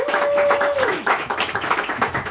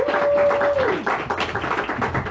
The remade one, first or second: first